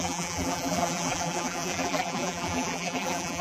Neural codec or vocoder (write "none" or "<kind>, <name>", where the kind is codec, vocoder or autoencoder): vocoder, BigVGAN v2